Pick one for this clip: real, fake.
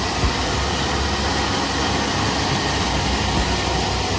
real